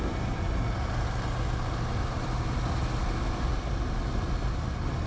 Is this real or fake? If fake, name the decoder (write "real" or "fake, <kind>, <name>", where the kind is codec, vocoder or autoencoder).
real